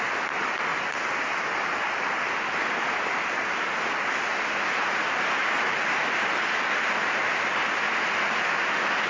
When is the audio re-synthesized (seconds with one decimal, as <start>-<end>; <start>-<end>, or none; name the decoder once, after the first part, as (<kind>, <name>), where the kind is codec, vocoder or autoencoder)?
none